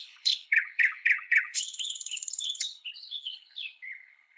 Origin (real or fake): fake